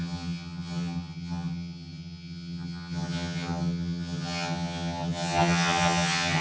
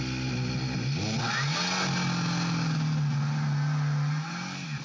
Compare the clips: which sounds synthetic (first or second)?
first